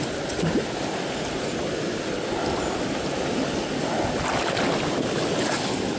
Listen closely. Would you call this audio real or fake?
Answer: real